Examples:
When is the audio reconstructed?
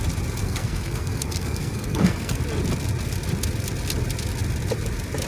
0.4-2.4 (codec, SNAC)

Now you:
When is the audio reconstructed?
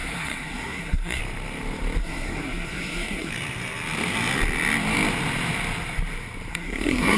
0.0-1.2 (codec, SNAC); 2.0-3.3; 6.5-7.2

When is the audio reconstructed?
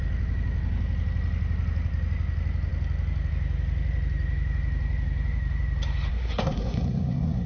6.1-7.5 (codec, SNAC)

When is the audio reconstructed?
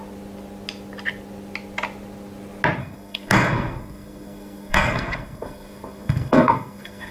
2.8-7.1 (codec, SNAC)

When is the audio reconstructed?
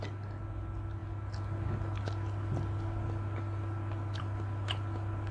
none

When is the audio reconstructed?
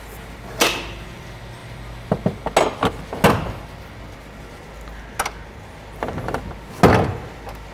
none